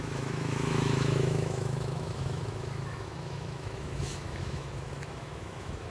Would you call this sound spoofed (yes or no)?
yes